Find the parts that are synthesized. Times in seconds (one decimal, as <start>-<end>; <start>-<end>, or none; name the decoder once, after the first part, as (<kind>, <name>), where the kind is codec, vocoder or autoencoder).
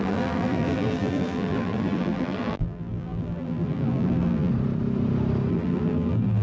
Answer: 0.0-4.5 (vocoder, BigVGAN v2); 5.5-6.4